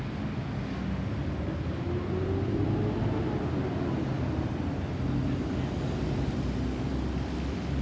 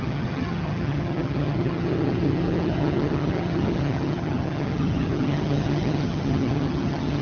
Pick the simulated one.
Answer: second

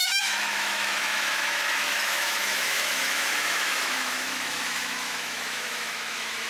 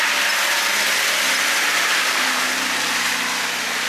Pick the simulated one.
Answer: first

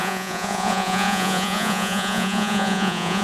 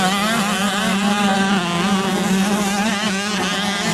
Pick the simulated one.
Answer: first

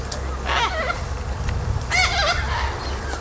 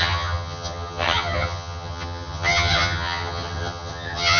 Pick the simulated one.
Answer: second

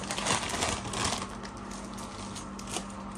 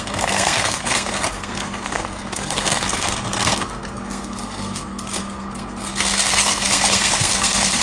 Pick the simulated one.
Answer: second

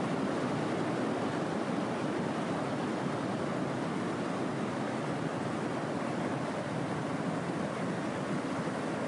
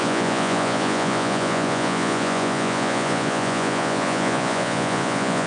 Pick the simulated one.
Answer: second